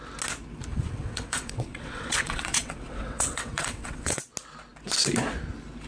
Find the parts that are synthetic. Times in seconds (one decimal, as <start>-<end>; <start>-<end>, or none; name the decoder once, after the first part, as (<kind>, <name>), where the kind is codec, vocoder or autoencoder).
0.7-4.2 (vocoder, WaveNeXt)